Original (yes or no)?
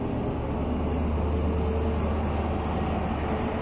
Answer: yes